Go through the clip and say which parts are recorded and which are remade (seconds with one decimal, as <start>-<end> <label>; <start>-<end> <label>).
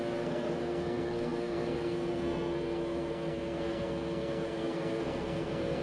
0.0-5.8 remade